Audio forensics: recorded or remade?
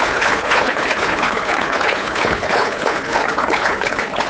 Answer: remade